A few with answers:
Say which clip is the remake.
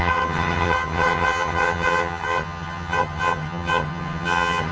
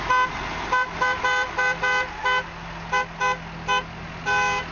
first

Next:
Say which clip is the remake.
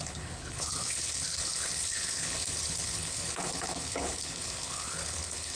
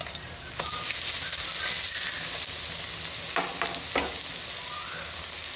first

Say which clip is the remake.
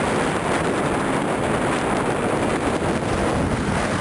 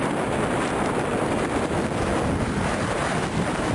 second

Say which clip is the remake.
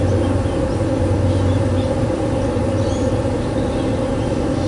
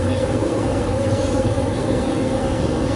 second